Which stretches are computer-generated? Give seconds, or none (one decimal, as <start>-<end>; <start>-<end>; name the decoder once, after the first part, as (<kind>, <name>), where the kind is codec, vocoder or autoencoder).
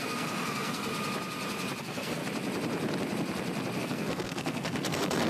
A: 0.0-0.9 (codec, SNAC); 1.8-2.2; 3.8-5.3